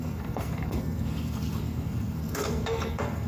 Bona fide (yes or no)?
no